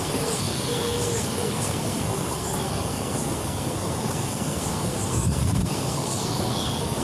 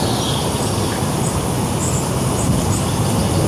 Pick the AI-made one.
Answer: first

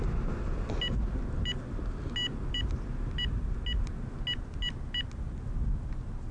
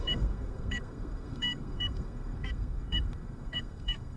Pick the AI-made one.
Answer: second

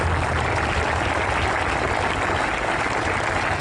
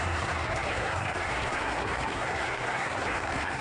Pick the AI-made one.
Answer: second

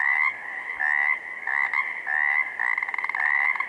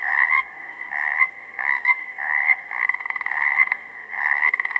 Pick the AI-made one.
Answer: second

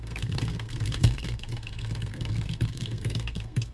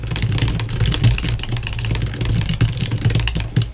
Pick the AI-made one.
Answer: first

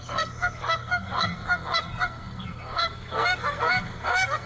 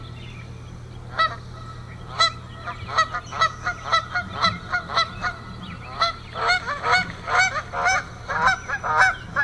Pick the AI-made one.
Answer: first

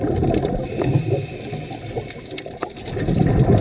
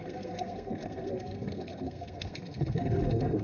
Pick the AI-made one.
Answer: second